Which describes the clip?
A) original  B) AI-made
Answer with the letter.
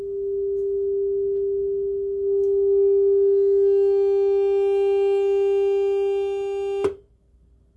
A